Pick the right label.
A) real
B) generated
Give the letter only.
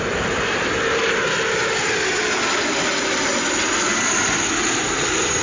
A